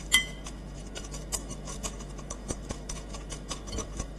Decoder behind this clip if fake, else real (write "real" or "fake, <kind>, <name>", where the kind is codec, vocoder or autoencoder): fake, autoencoder, DAC-VAE